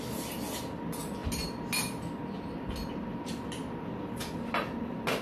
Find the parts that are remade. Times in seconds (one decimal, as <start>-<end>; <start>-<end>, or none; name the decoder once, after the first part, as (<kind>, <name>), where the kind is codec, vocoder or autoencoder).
none